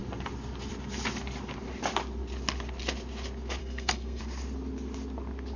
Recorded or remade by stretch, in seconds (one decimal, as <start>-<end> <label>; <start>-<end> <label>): 0.0-3.6 recorded; 3.6-4.2 remade; 4.2-5.6 recorded